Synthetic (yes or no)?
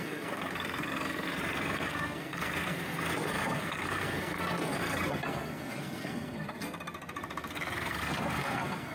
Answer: yes